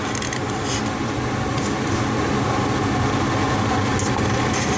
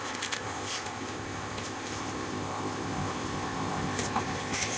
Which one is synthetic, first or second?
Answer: second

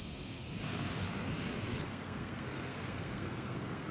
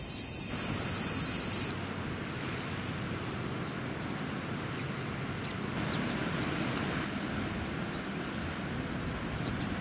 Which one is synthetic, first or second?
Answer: first